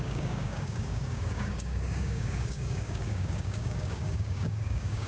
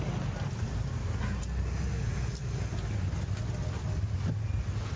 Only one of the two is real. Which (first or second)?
second